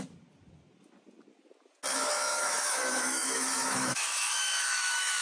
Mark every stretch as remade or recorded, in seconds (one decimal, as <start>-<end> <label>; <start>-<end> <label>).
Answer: 0.0-1.9 recorded; 1.9-5.2 remade